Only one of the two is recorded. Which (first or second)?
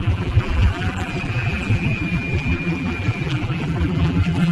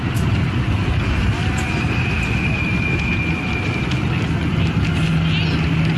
second